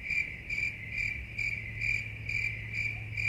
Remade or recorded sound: recorded